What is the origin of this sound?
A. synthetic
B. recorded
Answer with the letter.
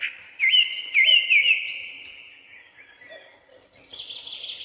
B